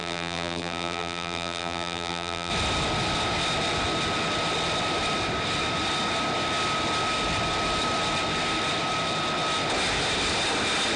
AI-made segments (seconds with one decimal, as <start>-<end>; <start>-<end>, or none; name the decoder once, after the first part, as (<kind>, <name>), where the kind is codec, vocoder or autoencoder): 0.0-2.5 (vocoder, BigVGAN v2)